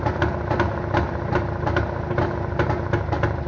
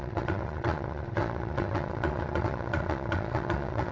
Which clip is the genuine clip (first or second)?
first